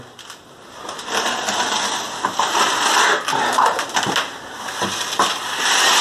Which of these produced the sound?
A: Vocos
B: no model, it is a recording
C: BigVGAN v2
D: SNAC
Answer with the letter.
B